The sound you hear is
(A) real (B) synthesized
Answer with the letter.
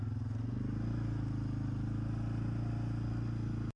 A